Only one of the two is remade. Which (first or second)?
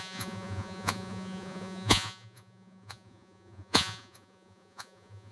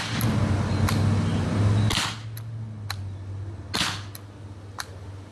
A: first